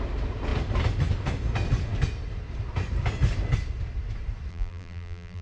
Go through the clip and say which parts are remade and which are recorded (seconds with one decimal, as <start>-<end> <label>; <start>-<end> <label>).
0.0-4.5 recorded; 4.5-5.4 remade